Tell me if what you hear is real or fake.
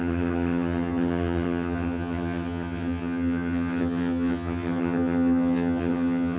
fake